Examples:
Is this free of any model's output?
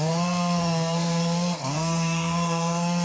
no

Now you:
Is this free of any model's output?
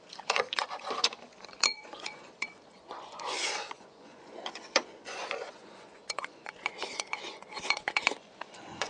no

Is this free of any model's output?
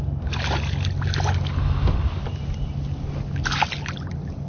yes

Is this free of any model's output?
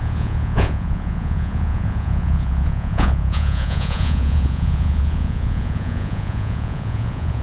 no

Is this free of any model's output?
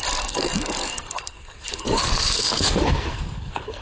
no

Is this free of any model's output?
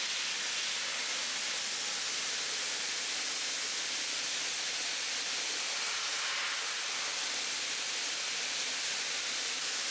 yes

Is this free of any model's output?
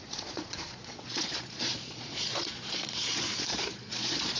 no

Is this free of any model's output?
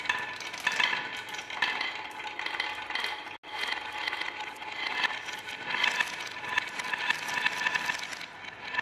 yes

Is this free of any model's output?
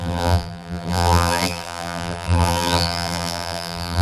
no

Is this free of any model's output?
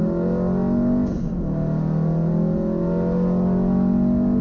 yes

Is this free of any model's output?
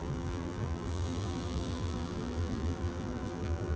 no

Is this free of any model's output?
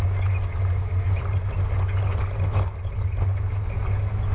yes